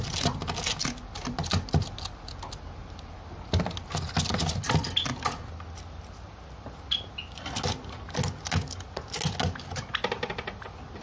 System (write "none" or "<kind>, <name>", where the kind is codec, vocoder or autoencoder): none